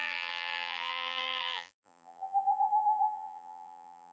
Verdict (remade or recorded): remade